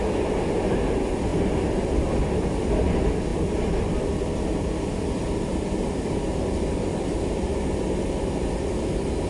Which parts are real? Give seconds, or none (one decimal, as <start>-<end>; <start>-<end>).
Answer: 0.0-3.3; 7.2-9.3